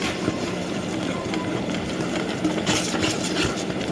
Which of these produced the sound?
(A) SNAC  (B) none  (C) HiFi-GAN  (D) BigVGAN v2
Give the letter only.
B